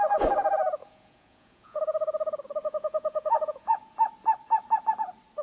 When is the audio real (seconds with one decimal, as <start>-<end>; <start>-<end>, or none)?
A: 0.0-0.8; 1.8-2.6; 4.1-5.4